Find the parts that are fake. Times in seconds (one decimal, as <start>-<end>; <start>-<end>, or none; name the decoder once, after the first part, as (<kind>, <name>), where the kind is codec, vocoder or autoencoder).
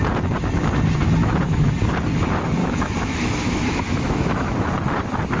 1.2-1.7 (autoencoder, DAC-VAE); 2.6-4.7